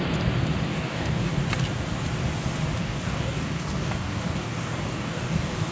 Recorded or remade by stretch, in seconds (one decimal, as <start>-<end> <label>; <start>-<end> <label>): 0.0-0.7 recorded; 0.7-1.3 remade; 1.3-2.8 recorded; 2.8-5.7 remade